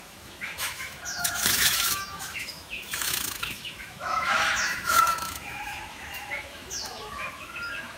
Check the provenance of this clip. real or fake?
fake